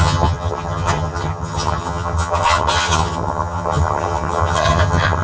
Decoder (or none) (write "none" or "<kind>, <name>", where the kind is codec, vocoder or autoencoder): vocoder, HiFi-GAN